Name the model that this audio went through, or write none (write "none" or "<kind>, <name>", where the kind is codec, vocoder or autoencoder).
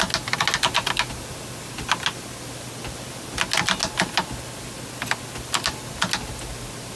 none